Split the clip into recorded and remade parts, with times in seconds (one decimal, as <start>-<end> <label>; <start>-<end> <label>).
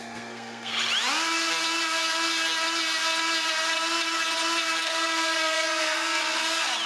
0.0-0.7 remade; 0.7-4.8 recorded; 4.8-6.2 remade; 6.2-6.9 recorded